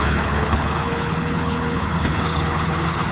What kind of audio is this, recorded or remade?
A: remade